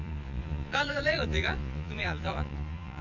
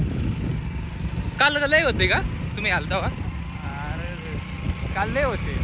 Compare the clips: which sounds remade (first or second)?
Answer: first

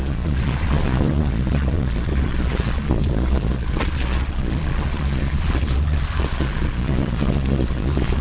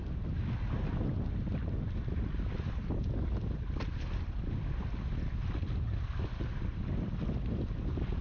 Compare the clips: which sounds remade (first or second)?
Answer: first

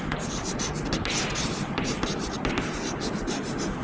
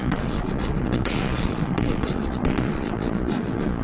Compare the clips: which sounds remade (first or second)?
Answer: second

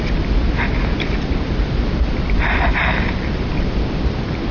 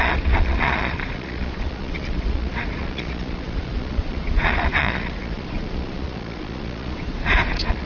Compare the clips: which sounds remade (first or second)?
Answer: second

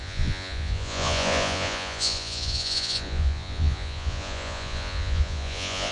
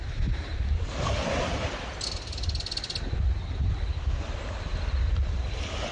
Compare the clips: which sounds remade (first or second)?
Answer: first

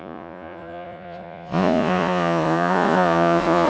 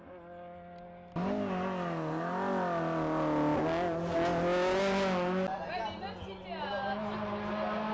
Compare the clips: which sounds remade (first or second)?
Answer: first